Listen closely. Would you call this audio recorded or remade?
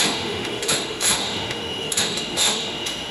remade